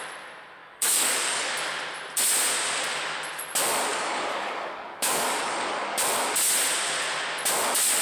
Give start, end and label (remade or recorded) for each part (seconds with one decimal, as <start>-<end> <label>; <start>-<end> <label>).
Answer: 0.0-0.6 recorded; 0.6-1.5 remade; 1.5-3.9 recorded; 3.9-6.0 remade; 6.0-8.0 recorded

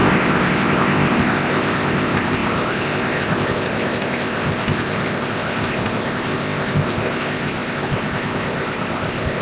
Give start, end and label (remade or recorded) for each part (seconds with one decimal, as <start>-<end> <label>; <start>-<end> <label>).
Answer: 0.0-9.4 remade

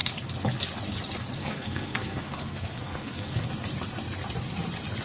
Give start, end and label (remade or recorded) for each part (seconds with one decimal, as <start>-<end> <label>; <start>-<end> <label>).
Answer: 0.0-1.4 recorded; 1.4-3.5 remade; 3.5-5.0 recorded

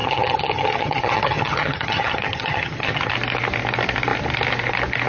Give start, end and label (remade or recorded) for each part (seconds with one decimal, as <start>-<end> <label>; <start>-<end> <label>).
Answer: 0.0-3.1 remade; 3.1-5.1 recorded

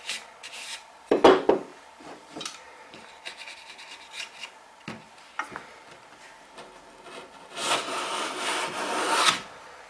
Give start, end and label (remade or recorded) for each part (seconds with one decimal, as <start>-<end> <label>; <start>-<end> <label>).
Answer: 0.0-1.7 recorded; 1.7-3.1 remade; 3.1-9.9 recorded

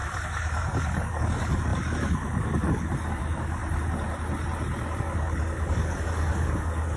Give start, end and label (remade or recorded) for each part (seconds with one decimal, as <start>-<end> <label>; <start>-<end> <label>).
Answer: 0.0-3.6 remade; 3.6-5.0 recorded; 5.0-7.0 remade

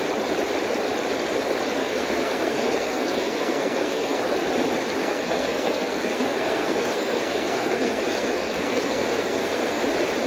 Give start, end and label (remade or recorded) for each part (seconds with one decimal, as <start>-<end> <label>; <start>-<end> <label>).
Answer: 0.0-1.8 recorded; 1.8-4.2 remade; 4.2-5.0 recorded; 5.0-9.8 remade; 9.8-10.3 recorded